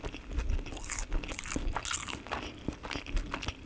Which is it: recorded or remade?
recorded